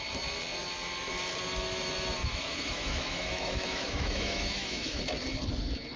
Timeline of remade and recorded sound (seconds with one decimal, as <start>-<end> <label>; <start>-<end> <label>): 0.0-2.2 recorded; 2.2-5.0 remade; 5.0-6.0 recorded